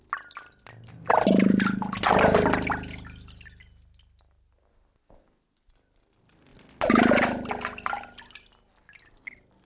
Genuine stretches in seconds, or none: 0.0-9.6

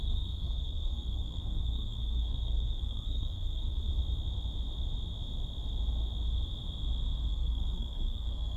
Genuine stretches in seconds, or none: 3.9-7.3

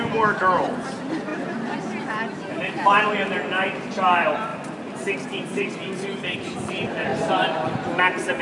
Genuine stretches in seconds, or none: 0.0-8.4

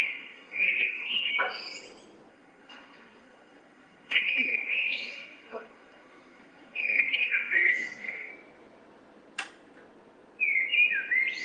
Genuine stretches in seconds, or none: 1.3-2.3; 8.3-11.4

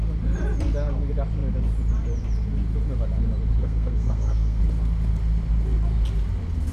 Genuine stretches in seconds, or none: 0.0-3.6; 4.6-6.7

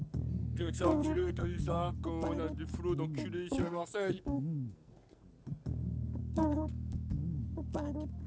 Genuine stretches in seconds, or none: 0.0-0.4; 1.9-3.6; 5.3-6.2; 7.4-8.3

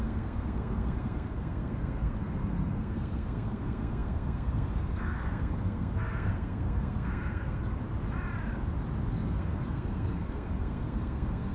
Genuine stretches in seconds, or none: 7.8-9.1